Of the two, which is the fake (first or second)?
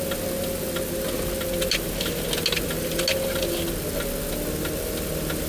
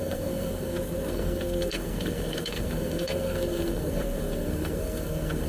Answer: second